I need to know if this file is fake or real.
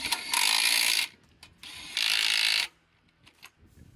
real